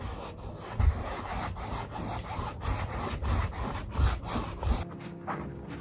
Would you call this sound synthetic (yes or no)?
no